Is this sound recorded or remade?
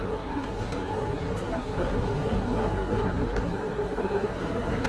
remade